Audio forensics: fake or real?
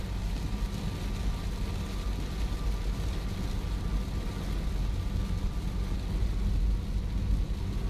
real